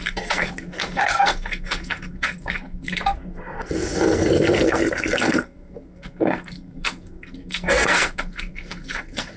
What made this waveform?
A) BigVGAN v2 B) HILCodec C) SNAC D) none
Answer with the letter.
C